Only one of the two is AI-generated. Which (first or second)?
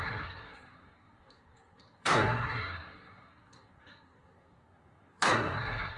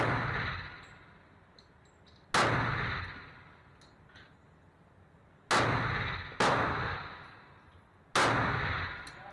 first